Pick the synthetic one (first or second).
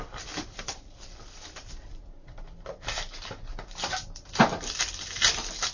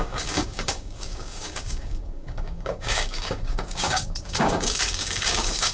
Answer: second